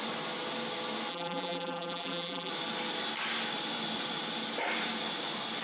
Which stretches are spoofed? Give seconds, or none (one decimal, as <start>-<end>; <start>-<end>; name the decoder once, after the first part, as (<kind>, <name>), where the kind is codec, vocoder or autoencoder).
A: 1.1-2.5 (vocoder, BigVGAN v2)